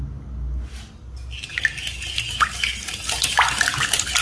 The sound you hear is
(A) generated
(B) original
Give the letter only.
B